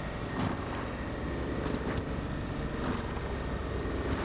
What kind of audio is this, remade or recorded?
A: recorded